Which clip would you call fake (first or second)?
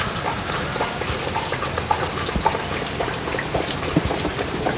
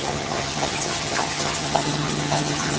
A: second